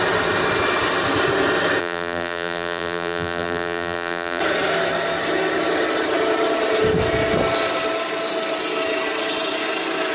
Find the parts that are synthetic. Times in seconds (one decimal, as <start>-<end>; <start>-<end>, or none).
1.8-4.4